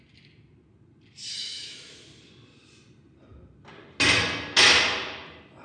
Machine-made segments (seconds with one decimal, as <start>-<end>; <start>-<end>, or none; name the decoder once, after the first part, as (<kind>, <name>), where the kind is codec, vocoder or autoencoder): 1.3-1.9 (autoencoder, DAC-VAE)